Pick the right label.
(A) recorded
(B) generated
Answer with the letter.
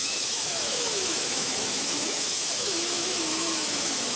B